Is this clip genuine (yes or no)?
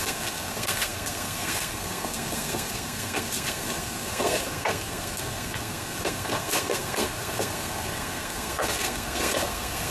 no